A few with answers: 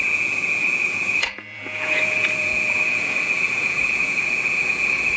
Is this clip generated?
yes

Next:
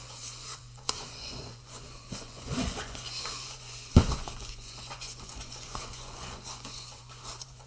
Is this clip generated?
yes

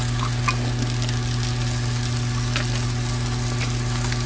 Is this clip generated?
no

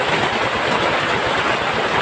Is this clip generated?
no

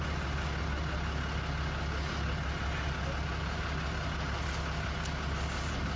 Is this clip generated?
no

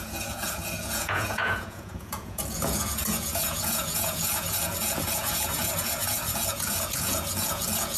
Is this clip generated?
yes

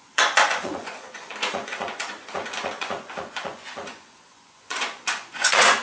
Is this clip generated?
yes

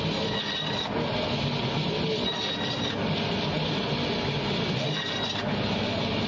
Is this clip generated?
no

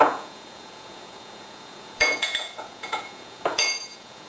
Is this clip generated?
yes